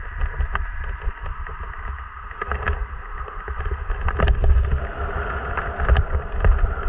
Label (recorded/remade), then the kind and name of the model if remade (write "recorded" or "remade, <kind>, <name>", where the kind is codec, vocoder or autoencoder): recorded